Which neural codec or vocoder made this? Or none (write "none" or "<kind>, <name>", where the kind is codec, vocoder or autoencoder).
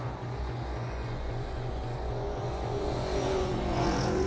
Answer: vocoder, Vocos